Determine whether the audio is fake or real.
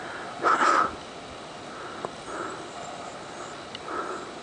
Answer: real